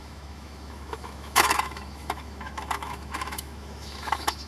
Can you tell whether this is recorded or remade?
remade